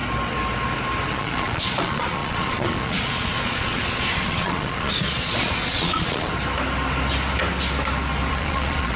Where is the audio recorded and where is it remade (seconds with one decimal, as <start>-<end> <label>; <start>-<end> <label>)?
0.0-1.1 recorded; 1.1-6.3 remade; 6.3-8.3 recorded; 8.3-9.0 remade